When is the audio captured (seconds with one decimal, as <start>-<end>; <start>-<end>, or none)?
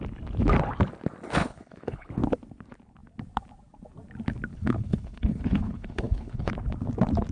0.0-1.4; 2.1-4.5; 6.5-7.3